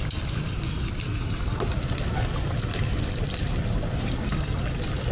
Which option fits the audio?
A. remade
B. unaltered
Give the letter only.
B